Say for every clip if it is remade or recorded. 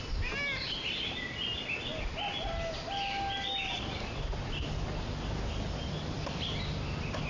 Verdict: recorded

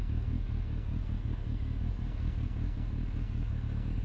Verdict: remade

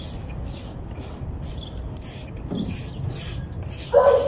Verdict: recorded